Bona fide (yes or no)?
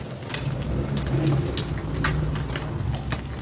yes